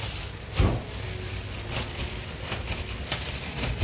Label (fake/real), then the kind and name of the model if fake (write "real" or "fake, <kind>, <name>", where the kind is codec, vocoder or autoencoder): real